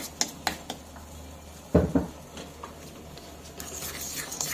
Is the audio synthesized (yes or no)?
no